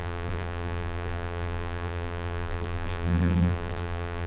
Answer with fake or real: fake